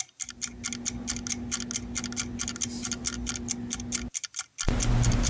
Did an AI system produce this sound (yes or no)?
no